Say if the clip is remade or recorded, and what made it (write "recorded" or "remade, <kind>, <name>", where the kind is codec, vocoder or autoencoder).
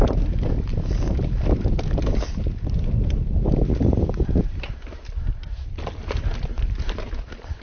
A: recorded